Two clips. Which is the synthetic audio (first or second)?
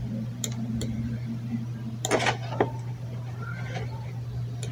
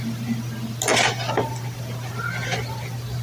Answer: first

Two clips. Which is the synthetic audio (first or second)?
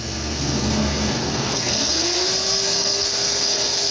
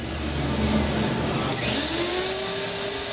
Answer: first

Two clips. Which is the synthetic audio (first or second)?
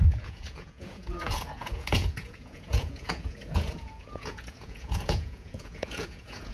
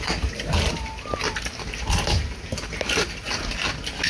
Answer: first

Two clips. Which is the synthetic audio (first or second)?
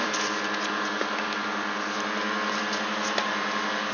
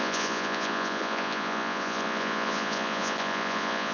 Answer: second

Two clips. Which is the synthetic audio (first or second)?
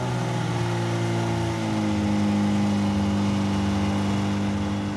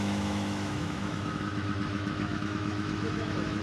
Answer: second